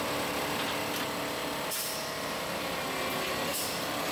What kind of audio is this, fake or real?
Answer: real